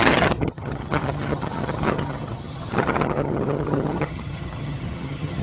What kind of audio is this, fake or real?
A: fake